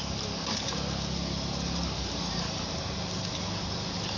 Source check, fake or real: real